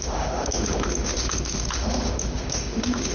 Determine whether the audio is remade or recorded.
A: remade